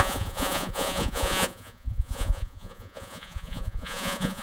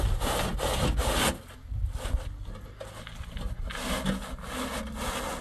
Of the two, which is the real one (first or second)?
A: second